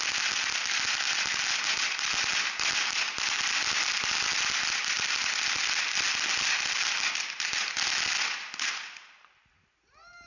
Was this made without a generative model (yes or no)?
yes